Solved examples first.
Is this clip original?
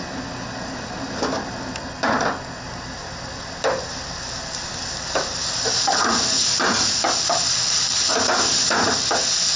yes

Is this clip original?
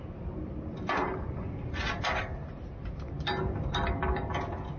yes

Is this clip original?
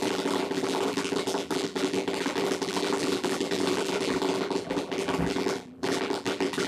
no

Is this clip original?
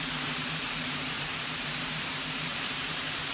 no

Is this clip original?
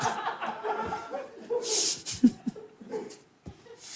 no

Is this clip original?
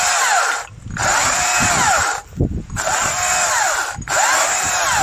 no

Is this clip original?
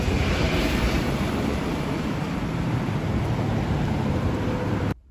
no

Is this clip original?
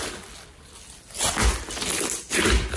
yes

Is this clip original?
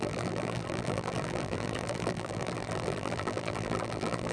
no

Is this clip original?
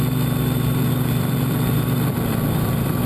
no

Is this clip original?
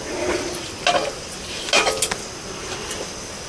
yes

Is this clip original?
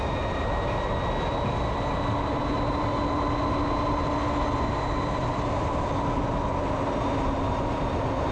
yes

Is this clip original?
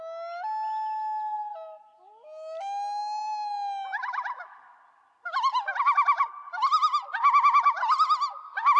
yes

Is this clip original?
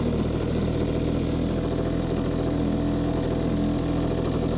yes